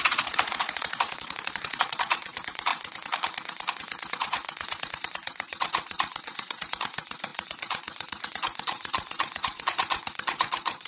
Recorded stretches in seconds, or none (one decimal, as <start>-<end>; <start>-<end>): 2.7-3.7